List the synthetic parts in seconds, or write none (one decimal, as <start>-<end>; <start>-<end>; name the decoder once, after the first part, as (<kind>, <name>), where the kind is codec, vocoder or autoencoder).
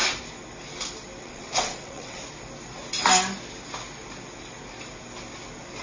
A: 1.2-2.2 (vocoder, WaveNeXt)